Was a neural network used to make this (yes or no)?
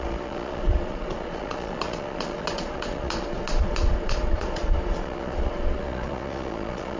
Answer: yes